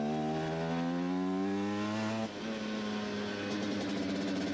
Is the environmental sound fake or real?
real